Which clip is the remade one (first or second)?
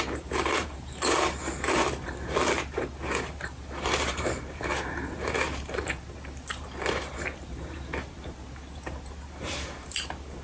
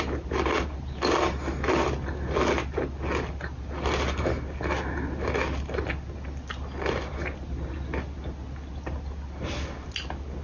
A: first